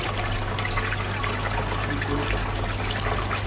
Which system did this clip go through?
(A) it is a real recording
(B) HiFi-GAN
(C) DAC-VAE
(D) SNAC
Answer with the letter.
A